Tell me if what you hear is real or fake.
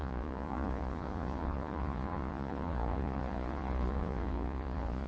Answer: fake